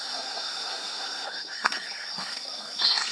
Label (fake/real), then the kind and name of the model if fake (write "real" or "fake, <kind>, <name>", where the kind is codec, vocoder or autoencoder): fake, codec, SNAC